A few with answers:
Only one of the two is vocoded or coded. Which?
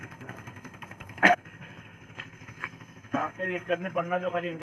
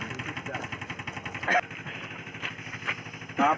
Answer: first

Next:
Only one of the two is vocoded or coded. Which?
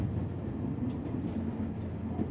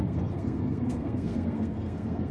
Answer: second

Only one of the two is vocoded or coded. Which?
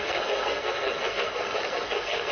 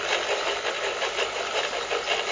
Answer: first